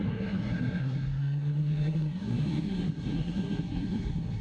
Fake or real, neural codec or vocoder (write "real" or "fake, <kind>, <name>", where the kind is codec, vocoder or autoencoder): fake, codec, SNAC